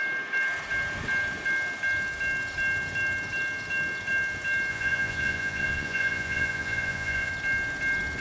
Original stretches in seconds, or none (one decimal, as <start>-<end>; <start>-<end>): 0.0-4.7; 7.3-8.2

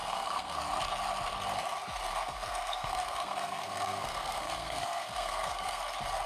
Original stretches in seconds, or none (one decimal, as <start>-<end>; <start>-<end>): 0.6-2.1; 5.8-6.3